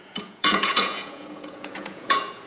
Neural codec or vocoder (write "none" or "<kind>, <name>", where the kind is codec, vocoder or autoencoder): vocoder, Vocos